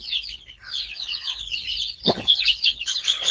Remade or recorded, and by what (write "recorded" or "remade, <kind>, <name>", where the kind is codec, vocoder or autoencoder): remade, codec, HILCodec